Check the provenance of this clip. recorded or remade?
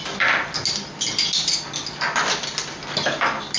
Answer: recorded